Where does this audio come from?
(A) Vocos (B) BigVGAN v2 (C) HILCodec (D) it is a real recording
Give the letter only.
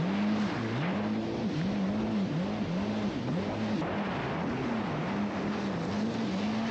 D